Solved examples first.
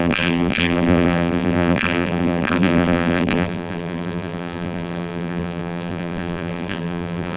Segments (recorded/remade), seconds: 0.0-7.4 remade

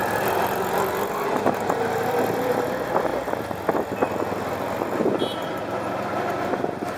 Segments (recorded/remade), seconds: 0.0-7.0 recorded

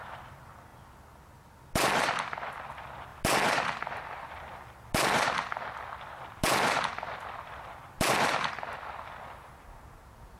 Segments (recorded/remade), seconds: 0.0-10.4 recorded